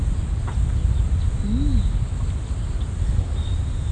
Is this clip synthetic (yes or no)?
no